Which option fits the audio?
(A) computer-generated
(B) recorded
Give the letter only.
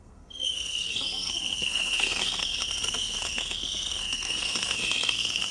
A